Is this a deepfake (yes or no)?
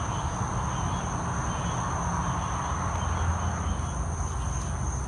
no